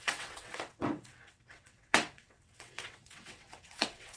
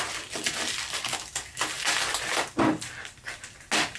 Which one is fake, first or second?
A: first